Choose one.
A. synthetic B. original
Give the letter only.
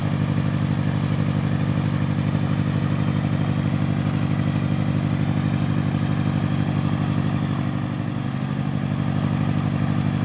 B